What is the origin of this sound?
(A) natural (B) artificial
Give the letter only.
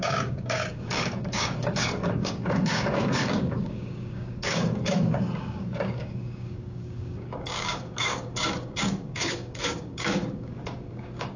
B